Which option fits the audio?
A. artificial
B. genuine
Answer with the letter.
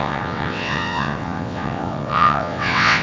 A